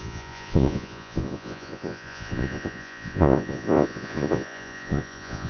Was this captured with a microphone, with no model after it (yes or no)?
no